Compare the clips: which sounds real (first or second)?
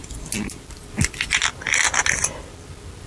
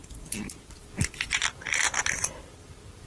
first